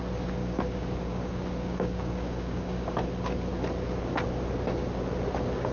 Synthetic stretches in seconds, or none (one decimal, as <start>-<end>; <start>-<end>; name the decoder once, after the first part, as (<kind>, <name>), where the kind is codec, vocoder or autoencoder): 0.4-3.1 (codec, DAC)